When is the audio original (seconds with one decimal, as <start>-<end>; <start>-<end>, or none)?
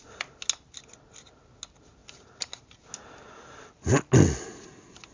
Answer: 0.0-5.1